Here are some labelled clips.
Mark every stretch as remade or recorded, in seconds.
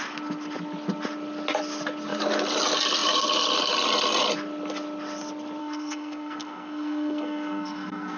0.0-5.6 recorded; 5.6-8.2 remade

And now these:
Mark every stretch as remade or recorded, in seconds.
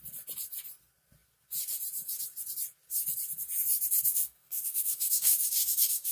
0.0-4.1 recorded; 4.1-6.1 remade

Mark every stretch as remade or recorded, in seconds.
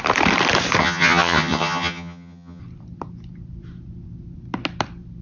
0.0-0.8 recorded; 0.8-2.6 remade; 2.6-5.2 recorded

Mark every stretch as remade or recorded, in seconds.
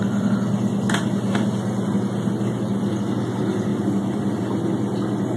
0.0-3.7 recorded; 3.7-4.4 remade; 4.4-5.4 recorded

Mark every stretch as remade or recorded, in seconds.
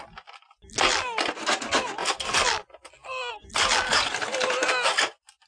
0.0-5.5 recorded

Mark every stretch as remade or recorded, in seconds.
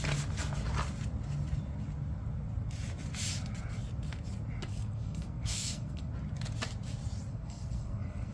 0.0-4.7 recorded; 4.7-6.1 remade; 6.1-7.3 recorded; 7.3-8.3 remade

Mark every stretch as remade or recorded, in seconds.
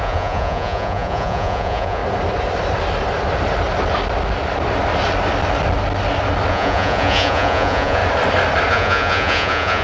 0.0-2.0 remade; 2.0-6.5 recorded; 6.5-8.0 remade; 8.0-8.7 recorded; 8.7-9.8 remade